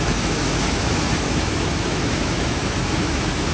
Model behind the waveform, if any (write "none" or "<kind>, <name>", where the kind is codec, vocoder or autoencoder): autoencoder, DAC-VAE